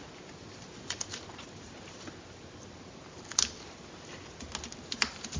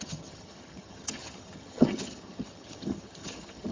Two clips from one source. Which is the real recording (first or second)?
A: first